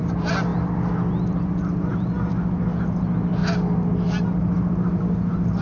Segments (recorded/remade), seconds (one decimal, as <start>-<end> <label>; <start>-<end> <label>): 0.0-5.6 recorded